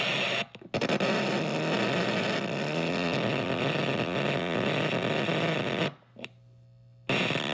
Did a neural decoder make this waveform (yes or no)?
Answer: no